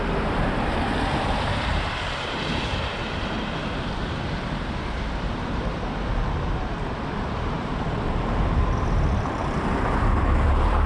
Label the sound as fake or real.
fake